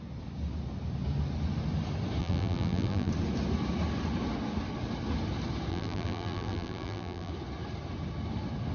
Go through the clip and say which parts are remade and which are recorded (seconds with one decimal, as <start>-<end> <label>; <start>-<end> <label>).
0.0-2.2 recorded; 2.2-3.1 remade; 3.1-5.7 recorded; 5.7-7.3 remade; 7.3-8.7 recorded